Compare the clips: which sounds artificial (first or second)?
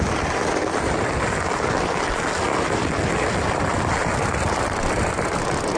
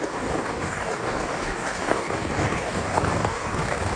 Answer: second